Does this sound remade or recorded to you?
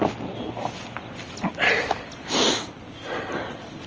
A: recorded